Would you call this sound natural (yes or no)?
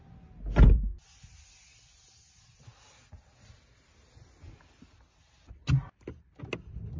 yes